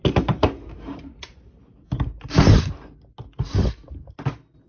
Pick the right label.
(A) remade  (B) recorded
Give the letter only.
B